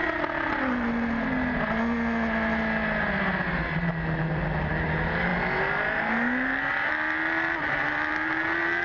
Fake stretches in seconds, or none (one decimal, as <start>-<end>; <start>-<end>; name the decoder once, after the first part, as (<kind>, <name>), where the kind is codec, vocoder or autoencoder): none